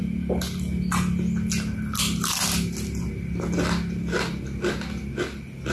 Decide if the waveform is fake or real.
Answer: real